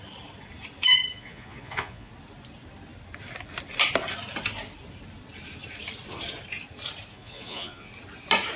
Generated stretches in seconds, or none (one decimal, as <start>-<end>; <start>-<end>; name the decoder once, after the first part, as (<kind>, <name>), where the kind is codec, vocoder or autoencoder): 1.1-2.1 (vocoder, Vocos); 7.1-7.9